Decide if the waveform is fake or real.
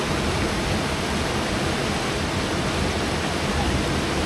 real